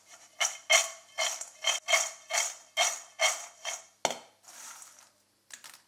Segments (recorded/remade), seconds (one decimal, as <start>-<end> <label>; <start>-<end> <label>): 0.0-5.9 recorded